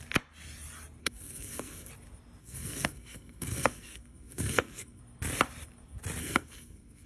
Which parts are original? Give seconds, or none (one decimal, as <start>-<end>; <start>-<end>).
0.0-1.0; 1.9-2.4; 5.0-6.2